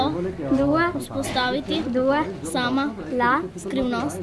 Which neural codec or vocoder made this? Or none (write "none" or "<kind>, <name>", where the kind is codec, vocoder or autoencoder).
none